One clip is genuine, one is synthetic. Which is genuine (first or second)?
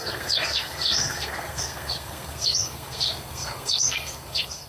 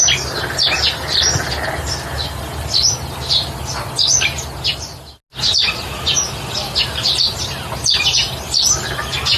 second